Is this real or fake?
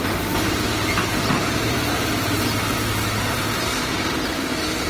fake